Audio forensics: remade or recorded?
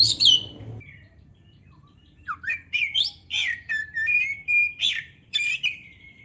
remade